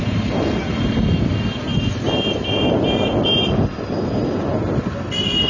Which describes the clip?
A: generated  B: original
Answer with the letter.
B